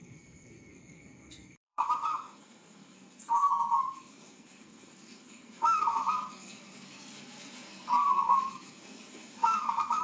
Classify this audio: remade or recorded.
remade